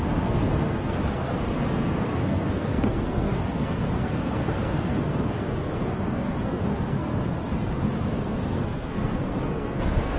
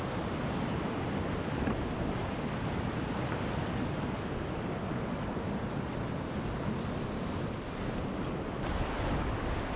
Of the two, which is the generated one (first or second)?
first